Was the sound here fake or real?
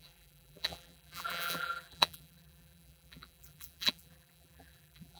fake